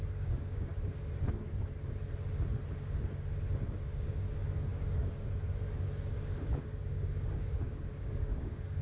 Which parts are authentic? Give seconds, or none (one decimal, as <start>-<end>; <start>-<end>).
0.7-3.7